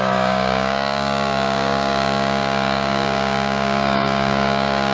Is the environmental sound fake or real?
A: fake